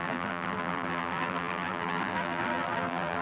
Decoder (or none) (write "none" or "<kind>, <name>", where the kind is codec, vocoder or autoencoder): vocoder, BigVGAN v2